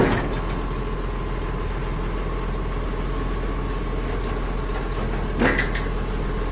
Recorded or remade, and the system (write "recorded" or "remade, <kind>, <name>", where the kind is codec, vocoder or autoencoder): recorded